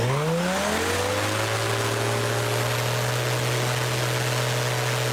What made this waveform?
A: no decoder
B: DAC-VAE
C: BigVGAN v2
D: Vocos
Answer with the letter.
A